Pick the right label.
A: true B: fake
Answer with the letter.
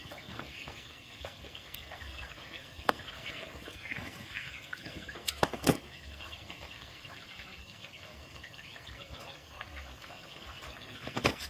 B